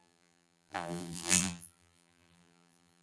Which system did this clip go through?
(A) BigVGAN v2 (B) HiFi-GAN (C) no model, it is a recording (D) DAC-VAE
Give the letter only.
A